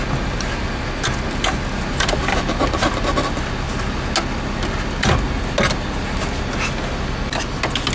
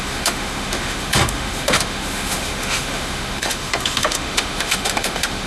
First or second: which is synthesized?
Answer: second